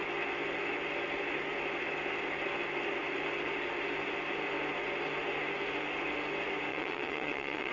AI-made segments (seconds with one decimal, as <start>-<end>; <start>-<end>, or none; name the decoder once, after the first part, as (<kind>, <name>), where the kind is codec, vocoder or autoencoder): 6.7-7.7 (vocoder, WaveNeXt)